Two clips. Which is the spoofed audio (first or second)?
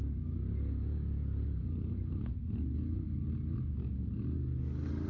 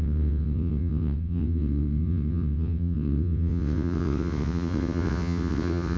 second